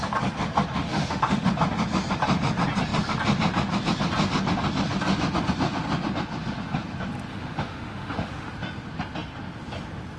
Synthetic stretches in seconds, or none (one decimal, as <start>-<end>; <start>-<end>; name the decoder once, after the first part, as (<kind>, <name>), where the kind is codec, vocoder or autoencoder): 0.8-1.5 (autoencoder, DAC-VAE); 7.3-8.5